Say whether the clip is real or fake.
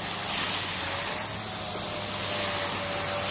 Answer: real